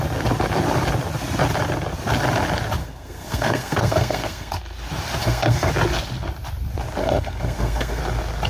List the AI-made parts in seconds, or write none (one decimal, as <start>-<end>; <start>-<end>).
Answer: 2.8-4.5; 5.2-5.7; 7.0-8.0